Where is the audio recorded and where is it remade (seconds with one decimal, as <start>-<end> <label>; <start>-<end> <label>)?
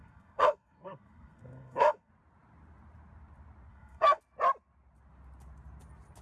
0.0-2.1 remade; 2.1-3.7 recorded; 3.7-4.2 remade; 4.2-6.2 recorded